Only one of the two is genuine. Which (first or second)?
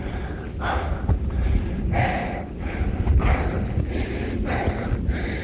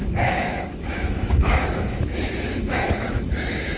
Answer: first